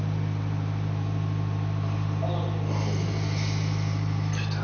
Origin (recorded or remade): recorded